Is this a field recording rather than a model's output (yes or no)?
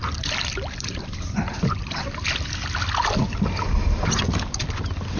yes